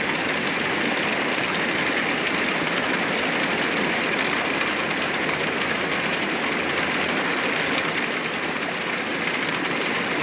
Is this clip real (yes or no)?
yes